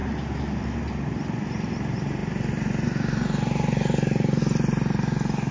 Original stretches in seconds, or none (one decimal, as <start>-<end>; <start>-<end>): 0.0-5.5